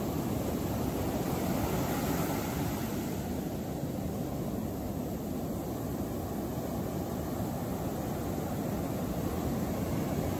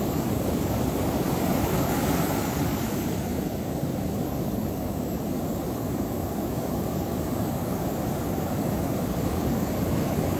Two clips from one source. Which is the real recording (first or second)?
first